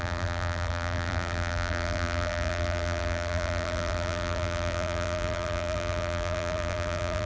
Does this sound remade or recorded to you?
remade